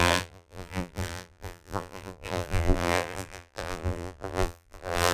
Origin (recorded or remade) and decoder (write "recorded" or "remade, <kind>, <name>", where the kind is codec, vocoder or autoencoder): remade, vocoder, BigVGAN v2